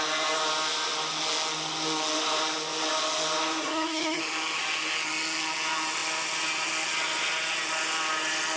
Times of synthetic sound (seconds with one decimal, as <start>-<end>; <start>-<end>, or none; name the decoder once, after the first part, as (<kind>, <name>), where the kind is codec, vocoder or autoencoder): 3.6-4.2 (codec, SNAC)